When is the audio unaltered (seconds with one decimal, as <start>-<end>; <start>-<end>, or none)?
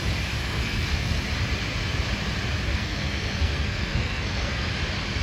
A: 0.0-0.4; 1.2-2.7; 4.7-5.2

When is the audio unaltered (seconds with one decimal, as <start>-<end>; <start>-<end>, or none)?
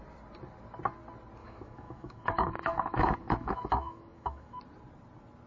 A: 0.0-1.4; 4.6-5.5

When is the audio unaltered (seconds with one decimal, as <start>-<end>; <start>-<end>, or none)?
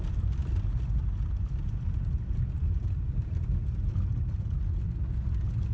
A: 0.0-5.7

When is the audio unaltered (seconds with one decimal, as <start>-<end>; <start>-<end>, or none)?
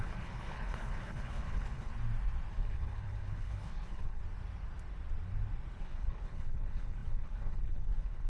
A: 1.9-2.5; 4.2-5.8